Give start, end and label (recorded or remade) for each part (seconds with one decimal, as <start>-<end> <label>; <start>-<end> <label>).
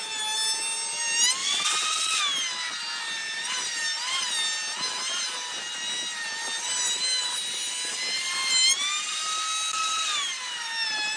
0.0-1.4 recorded; 1.4-2.2 remade; 2.2-11.2 recorded